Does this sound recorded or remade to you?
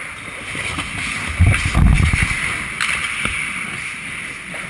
recorded